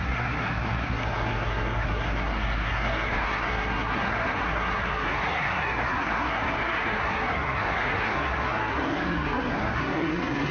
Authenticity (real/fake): fake